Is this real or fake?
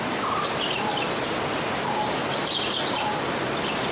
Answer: real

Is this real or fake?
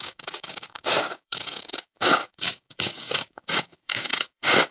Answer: fake